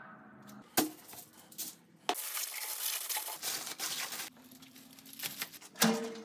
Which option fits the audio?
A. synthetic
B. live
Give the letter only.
B